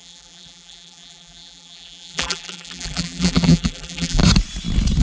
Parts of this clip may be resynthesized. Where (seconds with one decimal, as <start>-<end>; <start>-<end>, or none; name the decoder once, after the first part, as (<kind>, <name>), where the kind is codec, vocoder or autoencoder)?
0.0-4.2 (vocoder, BigVGAN v2)